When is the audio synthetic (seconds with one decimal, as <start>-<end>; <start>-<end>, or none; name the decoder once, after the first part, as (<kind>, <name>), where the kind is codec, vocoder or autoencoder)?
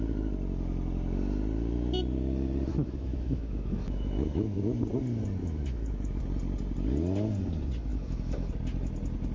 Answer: 2.7-4.6 (autoencoder, DAC-VAE); 5.4-6.2; 7.9-8.5